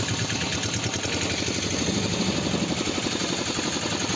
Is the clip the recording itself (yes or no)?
yes